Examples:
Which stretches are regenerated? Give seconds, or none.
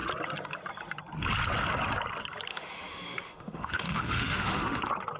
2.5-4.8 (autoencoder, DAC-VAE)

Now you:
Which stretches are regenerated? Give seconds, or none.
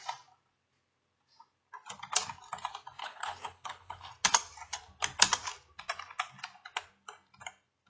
3.0-4.1 (codec, HILCodec)